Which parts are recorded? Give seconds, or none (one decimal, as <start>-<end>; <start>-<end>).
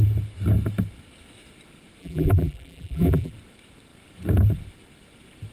0.0-2.0; 3.3-5.5